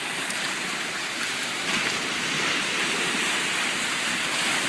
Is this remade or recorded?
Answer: remade